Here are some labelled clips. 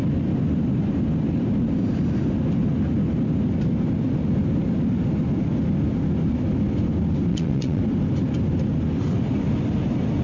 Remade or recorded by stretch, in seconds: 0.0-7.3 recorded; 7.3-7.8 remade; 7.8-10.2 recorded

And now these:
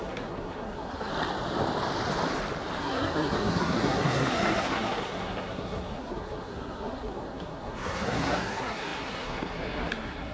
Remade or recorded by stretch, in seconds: 0.0-1.1 remade; 1.1-2.8 recorded; 2.8-10.3 remade